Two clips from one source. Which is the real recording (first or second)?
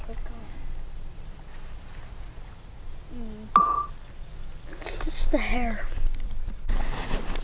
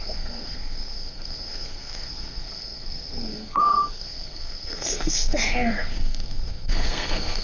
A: first